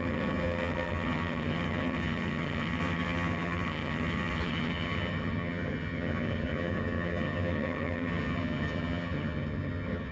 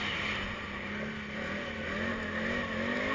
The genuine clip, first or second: second